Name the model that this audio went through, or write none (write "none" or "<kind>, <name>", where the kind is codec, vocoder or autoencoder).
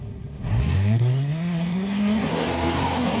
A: codec, SNAC